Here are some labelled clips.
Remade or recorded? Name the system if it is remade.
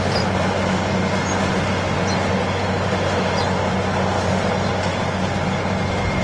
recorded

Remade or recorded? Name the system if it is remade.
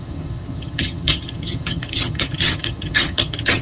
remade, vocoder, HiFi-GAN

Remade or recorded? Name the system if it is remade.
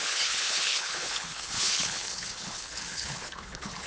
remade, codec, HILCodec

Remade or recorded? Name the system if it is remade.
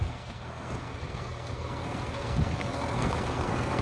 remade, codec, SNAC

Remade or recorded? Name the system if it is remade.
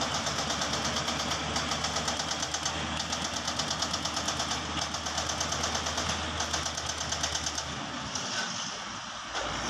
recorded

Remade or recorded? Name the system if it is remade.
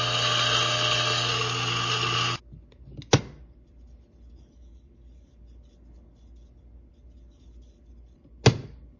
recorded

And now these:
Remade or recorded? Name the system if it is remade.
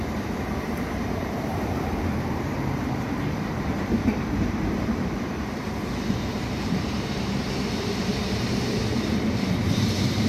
remade, vocoder, BigVGAN v2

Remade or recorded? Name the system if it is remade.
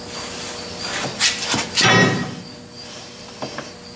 recorded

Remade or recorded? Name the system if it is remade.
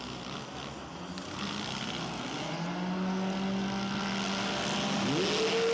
recorded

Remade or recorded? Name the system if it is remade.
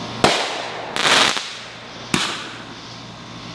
recorded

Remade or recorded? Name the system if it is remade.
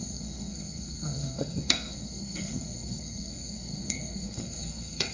remade, codec, SNAC